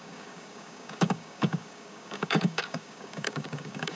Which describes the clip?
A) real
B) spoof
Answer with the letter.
B